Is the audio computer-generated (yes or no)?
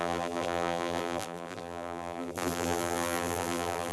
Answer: yes